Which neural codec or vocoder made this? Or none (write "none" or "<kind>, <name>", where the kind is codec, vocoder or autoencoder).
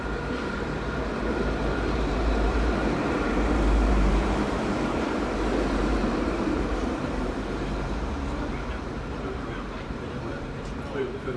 vocoder, BigVGAN v2